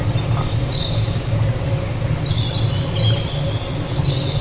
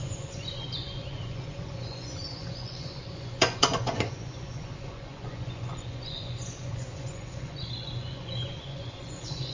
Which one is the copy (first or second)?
second